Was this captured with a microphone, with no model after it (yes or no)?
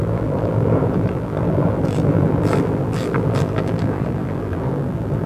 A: no